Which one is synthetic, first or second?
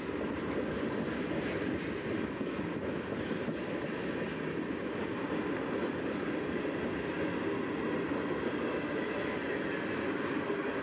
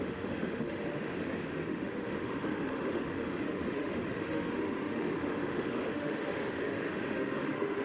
second